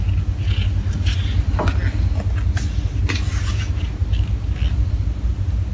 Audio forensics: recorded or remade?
recorded